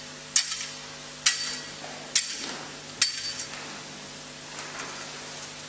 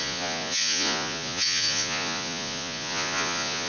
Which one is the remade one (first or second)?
second